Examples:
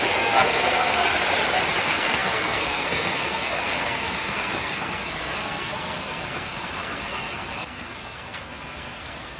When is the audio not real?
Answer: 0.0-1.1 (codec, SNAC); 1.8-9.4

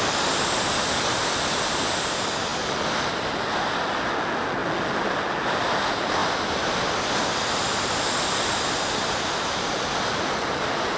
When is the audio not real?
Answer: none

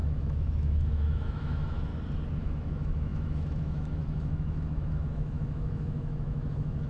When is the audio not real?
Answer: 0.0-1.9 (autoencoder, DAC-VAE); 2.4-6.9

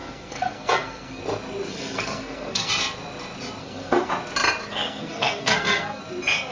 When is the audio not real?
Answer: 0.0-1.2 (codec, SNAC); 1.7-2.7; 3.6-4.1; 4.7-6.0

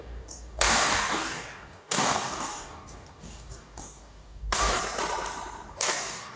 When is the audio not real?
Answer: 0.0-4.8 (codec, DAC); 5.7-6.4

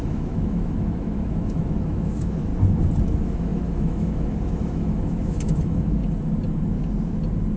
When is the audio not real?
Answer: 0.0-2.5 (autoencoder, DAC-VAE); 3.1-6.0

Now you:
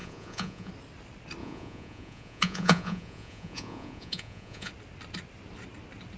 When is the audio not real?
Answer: 0.0-0.7 (vocoder, Vocos); 1.4-4.7

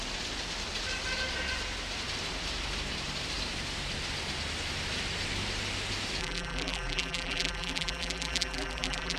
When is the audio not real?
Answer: 6.2-9.2 (vocoder, BigVGAN v2)